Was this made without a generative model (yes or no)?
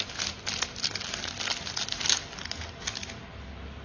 yes